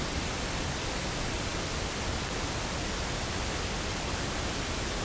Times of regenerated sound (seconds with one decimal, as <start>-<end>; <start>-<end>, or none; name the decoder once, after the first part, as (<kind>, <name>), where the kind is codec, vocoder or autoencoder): none